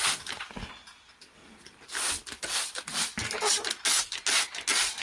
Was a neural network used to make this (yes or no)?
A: no